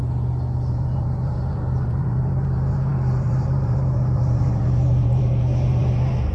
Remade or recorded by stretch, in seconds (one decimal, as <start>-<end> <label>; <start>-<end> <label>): 0.0-0.7 recorded; 0.7-6.3 remade